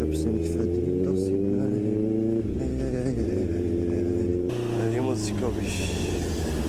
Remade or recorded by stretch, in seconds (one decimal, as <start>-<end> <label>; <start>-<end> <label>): 0.0-6.7 recorded